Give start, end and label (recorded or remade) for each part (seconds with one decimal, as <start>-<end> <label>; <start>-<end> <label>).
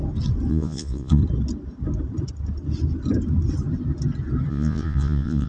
0.0-0.5 recorded; 0.5-1.2 remade; 1.2-4.5 recorded; 4.5-5.5 remade